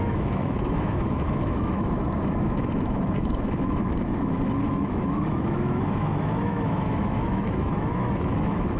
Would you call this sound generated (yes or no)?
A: yes